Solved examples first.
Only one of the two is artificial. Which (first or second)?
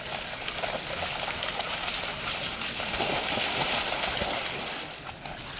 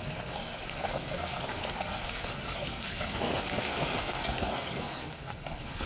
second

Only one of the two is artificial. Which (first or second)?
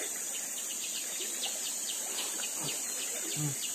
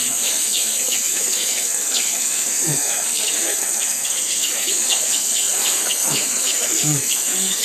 second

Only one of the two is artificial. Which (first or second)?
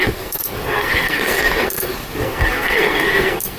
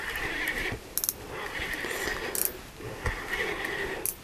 first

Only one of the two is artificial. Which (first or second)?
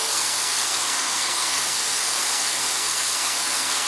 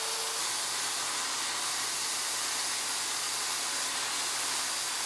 first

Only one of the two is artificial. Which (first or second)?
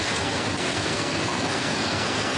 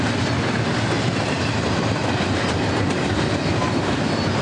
first